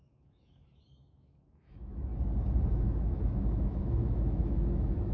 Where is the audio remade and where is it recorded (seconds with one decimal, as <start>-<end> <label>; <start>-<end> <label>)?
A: 0.0-2.1 remade; 2.1-2.7 recorded; 2.7-5.1 remade

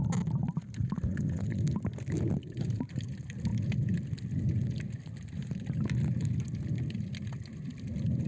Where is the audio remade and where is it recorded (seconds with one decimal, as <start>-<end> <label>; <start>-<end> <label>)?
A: 0.0-1.1 recorded; 1.1-1.6 remade; 1.6-8.3 recorded

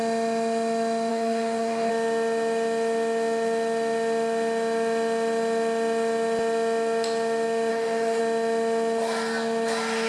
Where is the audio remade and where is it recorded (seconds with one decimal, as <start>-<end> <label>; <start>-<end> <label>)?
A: 0.0-1.1 recorded; 1.1-1.9 remade; 1.9-7.7 recorded; 7.7-8.2 remade; 8.2-10.1 recorded

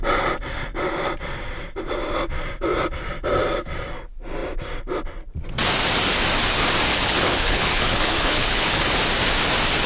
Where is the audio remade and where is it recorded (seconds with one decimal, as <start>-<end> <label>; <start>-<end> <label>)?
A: 0.0-6.9 recorded; 6.9-8.8 remade; 8.8-9.9 recorded